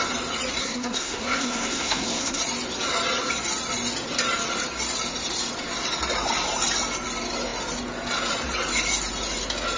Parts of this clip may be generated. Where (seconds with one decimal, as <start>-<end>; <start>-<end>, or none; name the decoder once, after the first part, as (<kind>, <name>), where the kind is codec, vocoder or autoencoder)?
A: 0.6-2.4 (codec, SNAC)